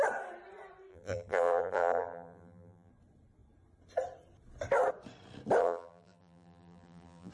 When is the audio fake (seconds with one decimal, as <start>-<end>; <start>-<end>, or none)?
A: 0.9-2.9; 5.6-7.3